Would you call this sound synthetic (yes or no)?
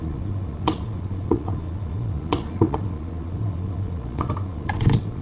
yes